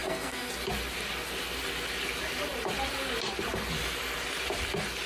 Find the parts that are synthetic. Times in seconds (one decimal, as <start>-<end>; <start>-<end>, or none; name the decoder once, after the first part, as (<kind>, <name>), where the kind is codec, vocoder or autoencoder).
0.0-0.5 (codec, SNAC)